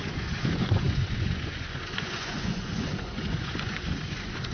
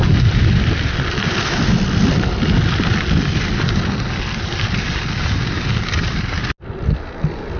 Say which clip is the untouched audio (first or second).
second